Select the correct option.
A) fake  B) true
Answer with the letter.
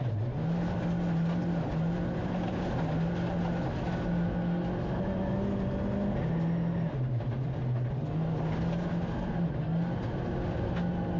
B